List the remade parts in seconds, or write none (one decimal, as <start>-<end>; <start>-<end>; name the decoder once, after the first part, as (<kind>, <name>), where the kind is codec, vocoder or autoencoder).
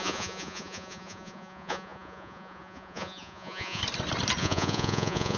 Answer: 0.0-3.8 (vocoder, Vocos); 4.4-5.4